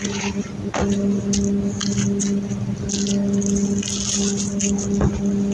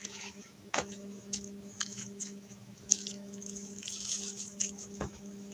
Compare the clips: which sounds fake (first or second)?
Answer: second